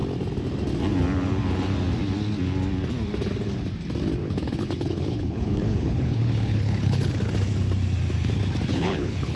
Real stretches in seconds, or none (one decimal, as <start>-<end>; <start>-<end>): 0.0-4.2; 7.3-8.7